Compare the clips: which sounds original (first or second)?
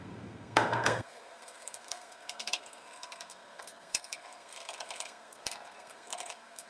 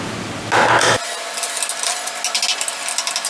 second